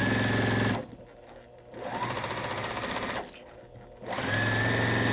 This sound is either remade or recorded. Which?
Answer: recorded